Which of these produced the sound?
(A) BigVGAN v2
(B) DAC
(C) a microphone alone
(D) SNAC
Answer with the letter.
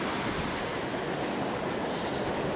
C